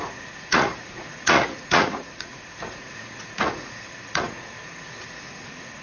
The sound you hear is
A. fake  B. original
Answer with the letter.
A